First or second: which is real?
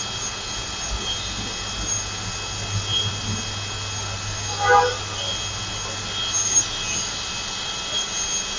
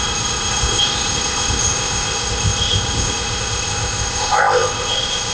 first